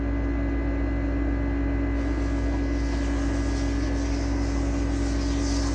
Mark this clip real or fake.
real